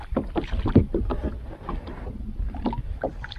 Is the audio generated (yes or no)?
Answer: no